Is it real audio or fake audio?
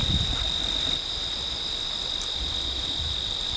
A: fake